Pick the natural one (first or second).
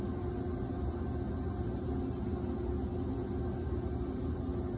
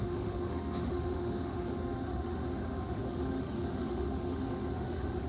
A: first